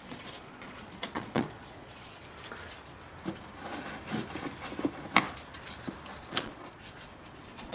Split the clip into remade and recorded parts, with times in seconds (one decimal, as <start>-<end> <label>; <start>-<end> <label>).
0.0-2.2 remade; 2.2-6.2 recorded; 6.2-7.7 remade